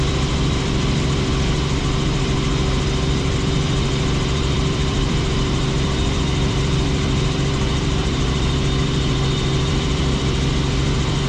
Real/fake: fake